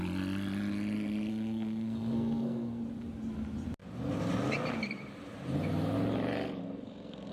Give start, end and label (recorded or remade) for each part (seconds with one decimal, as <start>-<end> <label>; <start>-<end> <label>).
0.0-1.3 recorded; 1.3-2.8 remade; 2.8-6.6 recorded; 6.6-7.3 remade